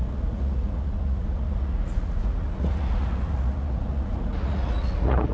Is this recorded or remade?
remade